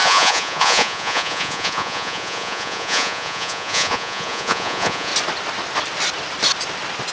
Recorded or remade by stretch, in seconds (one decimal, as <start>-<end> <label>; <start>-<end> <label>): 0.0-5.1 remade; 5.1-7.1 recorded